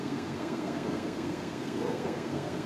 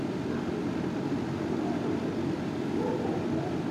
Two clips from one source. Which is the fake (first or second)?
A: first